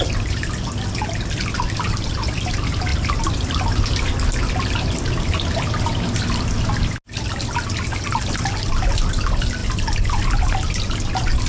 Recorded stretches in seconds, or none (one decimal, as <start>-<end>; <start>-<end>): 0.0-11.5

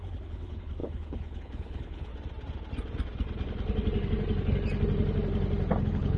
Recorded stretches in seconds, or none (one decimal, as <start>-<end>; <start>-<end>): 2.1-5.8

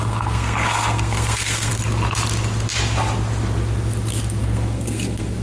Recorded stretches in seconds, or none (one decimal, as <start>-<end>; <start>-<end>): 1.7-4.4